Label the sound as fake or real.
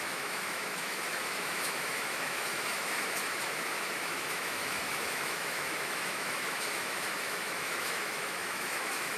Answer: fake